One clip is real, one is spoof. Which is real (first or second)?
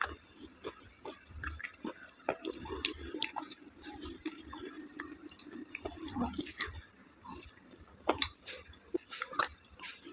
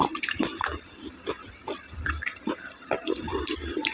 second